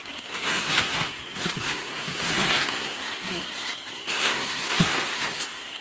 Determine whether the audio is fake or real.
fake